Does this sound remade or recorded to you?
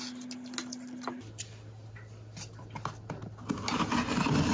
recorded